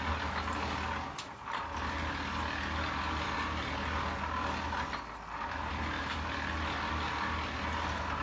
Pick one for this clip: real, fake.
real